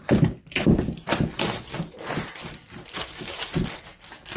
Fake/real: real